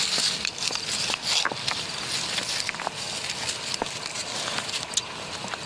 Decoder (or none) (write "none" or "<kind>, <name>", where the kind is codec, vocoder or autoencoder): none